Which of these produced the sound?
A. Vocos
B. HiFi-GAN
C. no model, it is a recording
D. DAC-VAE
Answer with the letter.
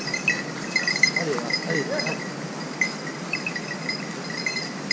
C